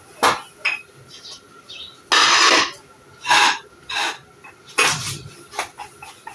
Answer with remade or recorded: recorded